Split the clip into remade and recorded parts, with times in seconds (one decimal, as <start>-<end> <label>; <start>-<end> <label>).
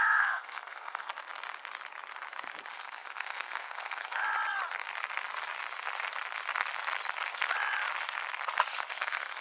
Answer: 0.0-1.1 remade; 1.1-2.7 recorded; 2.7-4.2 remade; 4.2-8.9 recorded; 8.9-9.4 remade